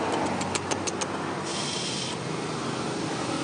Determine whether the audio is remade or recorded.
recorded